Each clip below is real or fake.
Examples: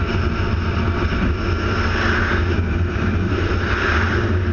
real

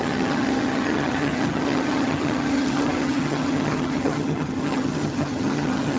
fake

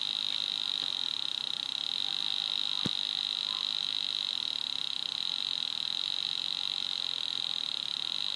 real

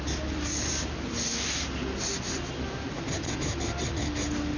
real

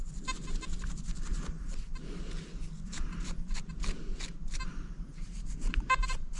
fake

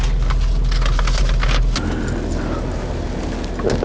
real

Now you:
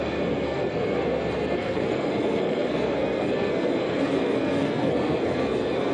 fake